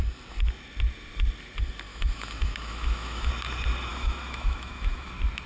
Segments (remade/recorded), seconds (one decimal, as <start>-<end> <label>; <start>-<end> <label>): 0.0-1.9 recorded; 1.9-3.3 remade; 3.3-3.9 recorded; 3.9-5.1 remade; 5.1-5.5 recorded

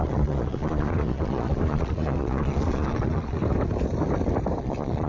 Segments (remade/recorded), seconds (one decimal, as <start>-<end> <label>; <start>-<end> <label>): 0.0-3.4 remade; 3.4-4.6 recorded; 4.6-5.1 remade

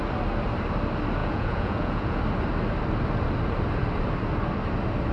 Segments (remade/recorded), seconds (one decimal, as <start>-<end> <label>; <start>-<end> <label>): 0.0-1.2 recorded; 1.2-2.2 remade; 2.2-5.1 recorded

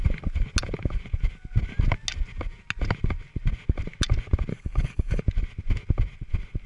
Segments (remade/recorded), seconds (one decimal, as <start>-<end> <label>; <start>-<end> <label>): 0.0-4.5 recorded; 4.5-5.2 remade; 5.2-6.7 recorded

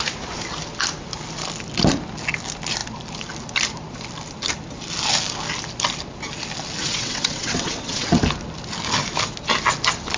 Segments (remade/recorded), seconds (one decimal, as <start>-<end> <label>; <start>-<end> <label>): 0.0-6.8 recorded; 6.8-8.2 remade; 8.2-10.2 recorded

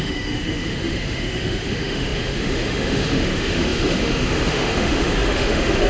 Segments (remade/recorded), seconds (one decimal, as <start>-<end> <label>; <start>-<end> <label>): 0.0-5.9 remade